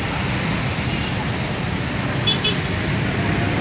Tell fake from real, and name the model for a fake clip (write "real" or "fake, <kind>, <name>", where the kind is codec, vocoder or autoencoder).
real